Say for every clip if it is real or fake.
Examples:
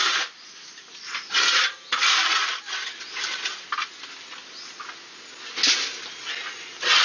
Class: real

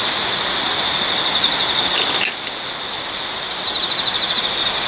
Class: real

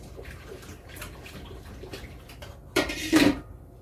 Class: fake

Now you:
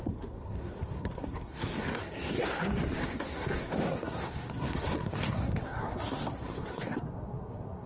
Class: fake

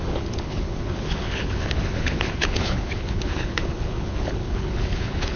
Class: fake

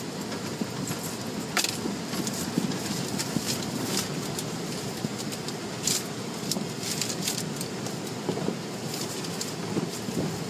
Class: real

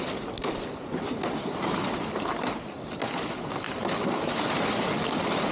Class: real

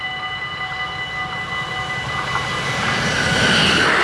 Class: real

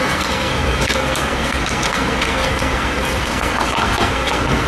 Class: fake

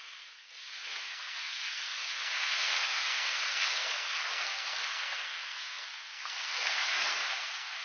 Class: fake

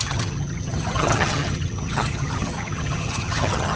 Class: fake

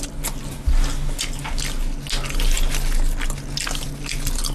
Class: real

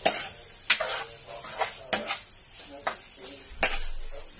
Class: real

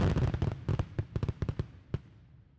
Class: real